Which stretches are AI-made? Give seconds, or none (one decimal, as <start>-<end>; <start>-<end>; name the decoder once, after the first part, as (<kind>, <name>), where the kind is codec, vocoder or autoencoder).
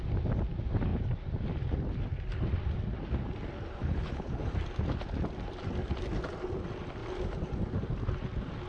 3.8-4.5 (codec, HILCodec)